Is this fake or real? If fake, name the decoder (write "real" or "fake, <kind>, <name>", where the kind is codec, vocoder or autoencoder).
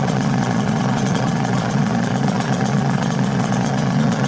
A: fake, vocoder, Vocos